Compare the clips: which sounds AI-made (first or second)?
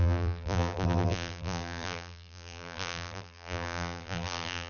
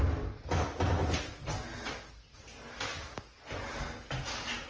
first